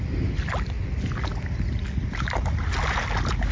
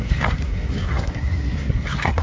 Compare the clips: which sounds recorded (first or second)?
first